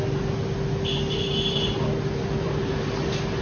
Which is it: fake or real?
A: real